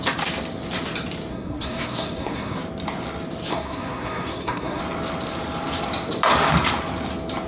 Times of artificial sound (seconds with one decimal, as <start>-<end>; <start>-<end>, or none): 1.3-2.6; 3.5-4.8